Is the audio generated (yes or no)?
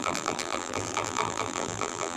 yes